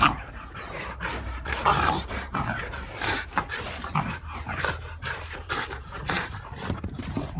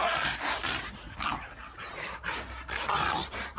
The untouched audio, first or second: second